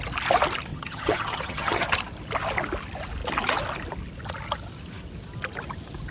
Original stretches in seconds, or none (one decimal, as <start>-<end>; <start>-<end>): 0.0-0.7; 2.0-6.1